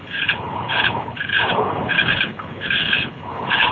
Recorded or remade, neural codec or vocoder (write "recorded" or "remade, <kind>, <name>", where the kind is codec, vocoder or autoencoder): remade, codec, HILCodec